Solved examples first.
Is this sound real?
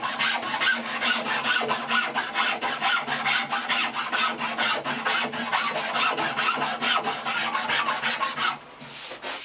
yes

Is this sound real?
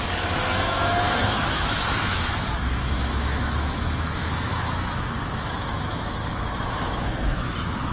no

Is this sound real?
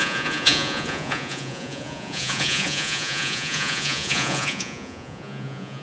no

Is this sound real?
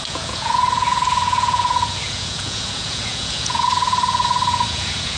no